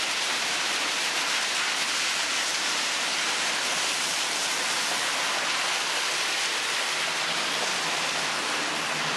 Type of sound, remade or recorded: remade